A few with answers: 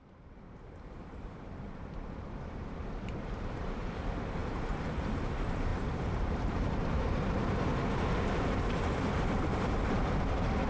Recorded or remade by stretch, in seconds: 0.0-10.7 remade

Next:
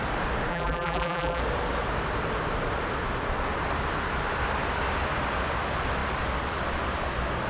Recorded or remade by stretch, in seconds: 0.0-0.5 recorded; 0.5-1.4 remade; 1.4-7.5 recorded

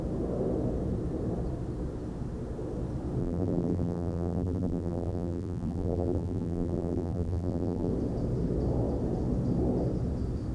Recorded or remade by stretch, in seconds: 0.0-3.2 recorded; 3.2-7.9 remade; 7.9-10.5 recorded

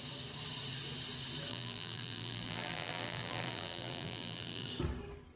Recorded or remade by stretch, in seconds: 0.0-1.5 recorded; 1.5-4.7 remade; 4.7-5.4 recorded